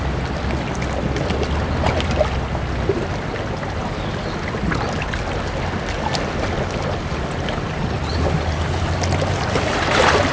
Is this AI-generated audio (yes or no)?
no